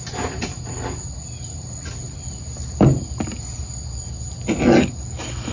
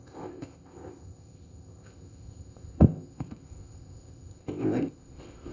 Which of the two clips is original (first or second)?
first